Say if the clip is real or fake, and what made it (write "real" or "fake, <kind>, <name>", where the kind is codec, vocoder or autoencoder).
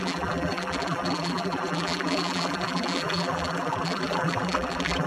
fake, vocoder, BigVGAN v2